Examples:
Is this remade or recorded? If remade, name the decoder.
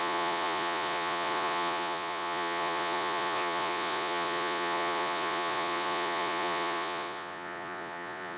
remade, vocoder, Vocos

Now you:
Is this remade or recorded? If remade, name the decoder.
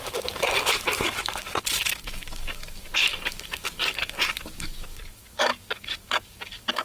remade, codec, DAC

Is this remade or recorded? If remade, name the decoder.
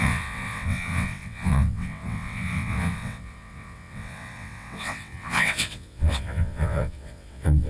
remade, vocoder, WaveNeXt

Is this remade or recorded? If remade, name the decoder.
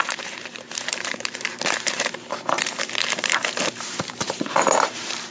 remade, vocoder, BigVGAN v2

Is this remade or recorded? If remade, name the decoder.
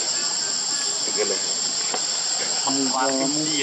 recorded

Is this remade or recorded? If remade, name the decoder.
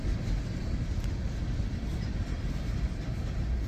recorded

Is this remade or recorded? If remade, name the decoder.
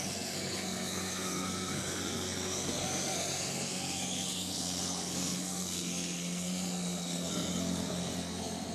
remade, codec, SNAC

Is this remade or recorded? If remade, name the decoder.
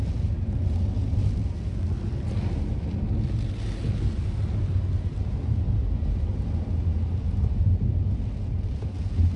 recorded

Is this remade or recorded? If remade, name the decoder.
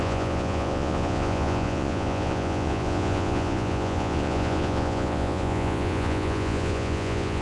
remade, vocoder, Vocos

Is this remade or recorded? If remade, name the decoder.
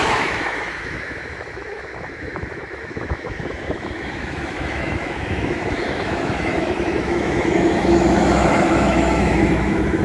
remade, autoencoder, DAC-VAE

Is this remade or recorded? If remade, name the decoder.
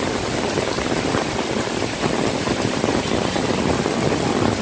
recorded